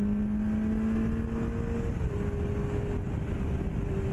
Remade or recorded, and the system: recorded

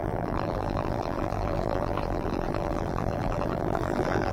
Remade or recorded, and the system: remade, vocoder, BigVGAN v2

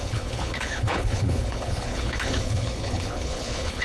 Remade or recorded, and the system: remade, codec, HILCodec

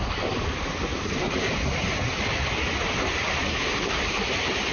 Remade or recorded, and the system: recorded